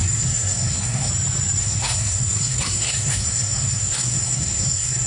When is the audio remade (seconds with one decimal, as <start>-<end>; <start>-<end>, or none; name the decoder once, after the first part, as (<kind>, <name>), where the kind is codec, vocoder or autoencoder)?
0.0-1.1 (codec, SNAC); 1.6-5.1